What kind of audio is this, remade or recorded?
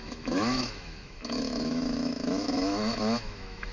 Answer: remade